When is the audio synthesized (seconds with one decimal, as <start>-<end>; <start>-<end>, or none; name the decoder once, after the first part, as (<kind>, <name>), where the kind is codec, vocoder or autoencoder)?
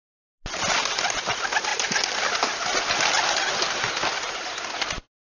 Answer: none